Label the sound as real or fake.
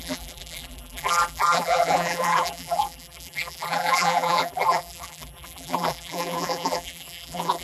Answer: fake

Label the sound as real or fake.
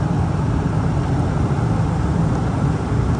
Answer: real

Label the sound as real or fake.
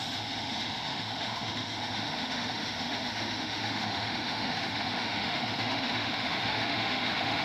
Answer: fake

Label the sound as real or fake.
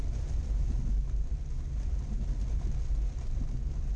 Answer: real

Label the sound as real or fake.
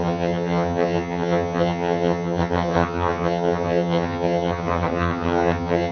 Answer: fake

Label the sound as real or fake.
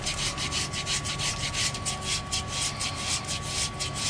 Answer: real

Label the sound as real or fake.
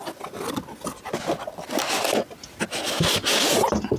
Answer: real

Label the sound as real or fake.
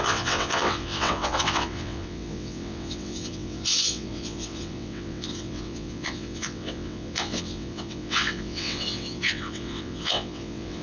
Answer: fake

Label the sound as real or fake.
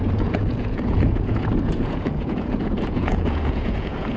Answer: fake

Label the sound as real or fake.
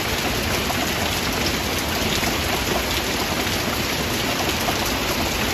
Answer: real